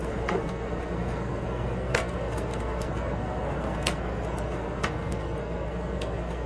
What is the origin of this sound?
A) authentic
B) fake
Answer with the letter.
B